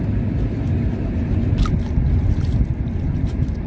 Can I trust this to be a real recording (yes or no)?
yes